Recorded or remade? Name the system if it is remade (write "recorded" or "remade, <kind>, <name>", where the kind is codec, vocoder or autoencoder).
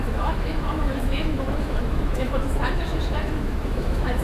remade, autoencoder, DAC-VAE